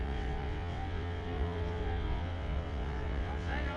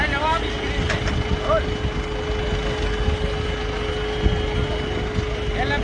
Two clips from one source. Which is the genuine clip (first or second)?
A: second